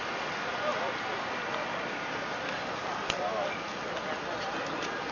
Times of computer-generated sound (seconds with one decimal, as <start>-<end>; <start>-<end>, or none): none